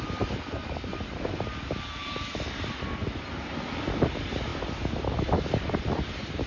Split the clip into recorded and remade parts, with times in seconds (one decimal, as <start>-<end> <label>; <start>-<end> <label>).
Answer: 0.0-6.5 recorded